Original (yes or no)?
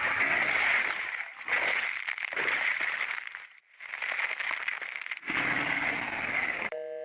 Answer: yes